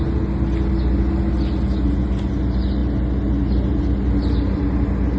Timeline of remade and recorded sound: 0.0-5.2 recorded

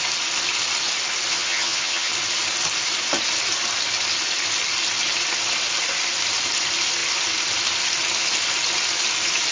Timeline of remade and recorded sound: 0.0-1.3 recorded; 1.3-2.1 remade; 2.1-9.5 recorded

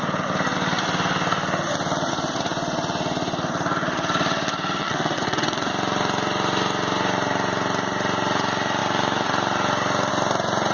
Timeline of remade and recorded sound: 0.0-4.8 recorded; 4.8-5.7 remade; 5.7-10.7 recorded

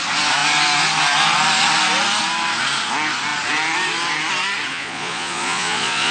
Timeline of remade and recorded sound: 0.0-4.7 recorded; 4.7-6.1 remade